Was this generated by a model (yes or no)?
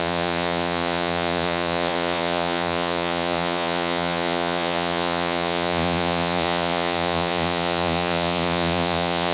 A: yes